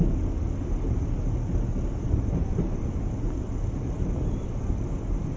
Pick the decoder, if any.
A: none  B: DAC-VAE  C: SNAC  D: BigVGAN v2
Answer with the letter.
A